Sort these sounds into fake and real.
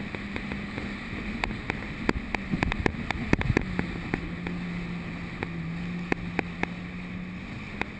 real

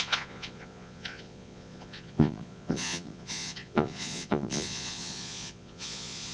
fake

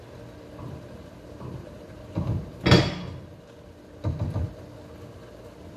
real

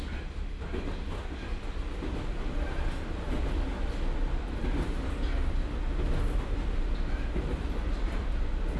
real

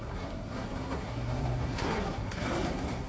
fake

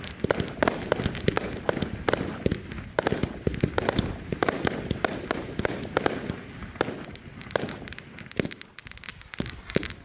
real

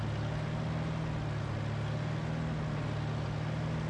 real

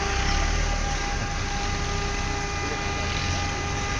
real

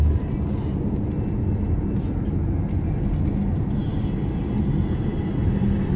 real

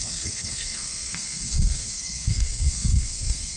fake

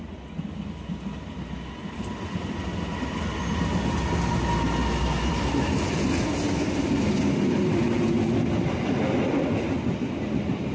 real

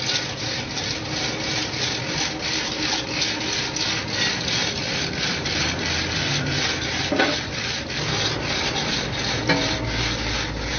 real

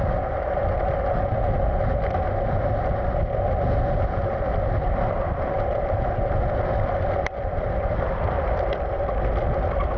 real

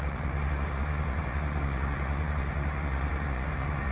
fake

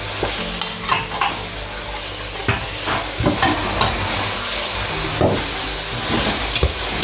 real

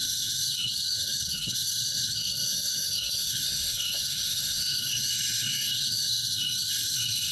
fake